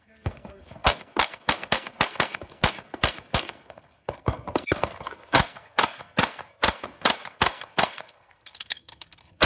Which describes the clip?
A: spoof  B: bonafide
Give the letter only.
A